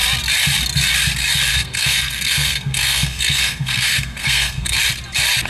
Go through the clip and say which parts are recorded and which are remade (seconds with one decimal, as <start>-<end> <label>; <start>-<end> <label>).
0.0-1.5 recorded; 1.5-4.8 remade; 4.8-5.5 recorded

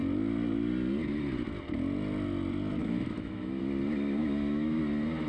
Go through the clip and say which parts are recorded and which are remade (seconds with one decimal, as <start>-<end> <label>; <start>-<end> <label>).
0.0-2.8 recorded; 2.8-3.6 remade; 3.6-4.2 recorded; 4.2-4.8 remade; 4.8-5.3 recorded

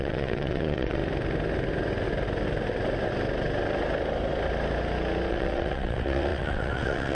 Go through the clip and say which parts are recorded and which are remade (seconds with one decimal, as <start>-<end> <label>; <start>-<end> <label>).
0.0-1.0 remade; 1.0-5.3 recorded; 5.3-7.1 remade

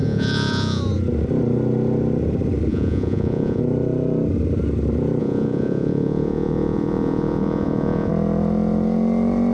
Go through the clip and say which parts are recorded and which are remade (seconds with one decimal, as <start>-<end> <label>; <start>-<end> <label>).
0.0-0.8 remade; 0.8-2.7 recorded; 2.7-3.6 remade; 3.6-5.2 recorded; 5.2-8.1 remade; 8.1-9.5 recorded

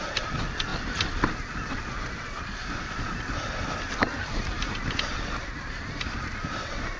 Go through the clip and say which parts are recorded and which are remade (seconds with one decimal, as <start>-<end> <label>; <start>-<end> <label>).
0.0-7.0 recorded

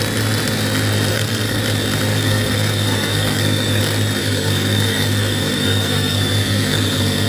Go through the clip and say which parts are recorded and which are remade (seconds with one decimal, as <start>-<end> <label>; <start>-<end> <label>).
0.0-1.1 recorded; 1.1-1.6 remade; 1.6-2.1 recorded; 2.1-3.8 remade; 3.8-4.2 recorded; 4.2-7.3 remade